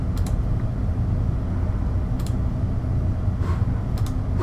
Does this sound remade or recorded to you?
recorded